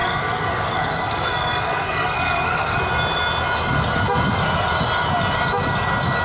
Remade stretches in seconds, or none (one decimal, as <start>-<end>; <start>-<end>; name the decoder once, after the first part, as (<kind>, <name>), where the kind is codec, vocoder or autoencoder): 0.0-2.8 (codec, SNAC)